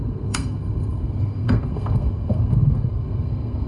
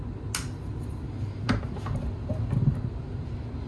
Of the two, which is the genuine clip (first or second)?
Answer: second